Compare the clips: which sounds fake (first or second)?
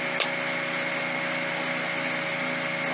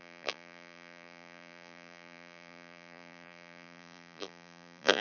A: second